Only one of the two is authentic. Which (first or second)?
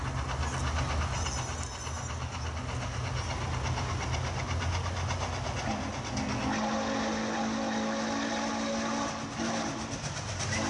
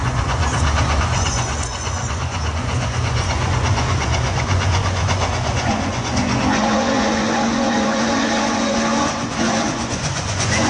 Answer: first